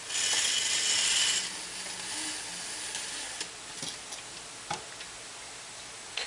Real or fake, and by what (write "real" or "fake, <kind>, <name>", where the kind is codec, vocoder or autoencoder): real